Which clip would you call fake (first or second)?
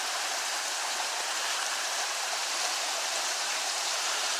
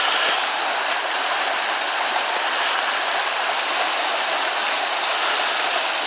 first